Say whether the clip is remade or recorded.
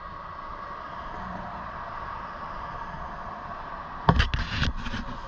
recorded